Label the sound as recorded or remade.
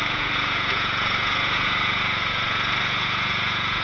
remade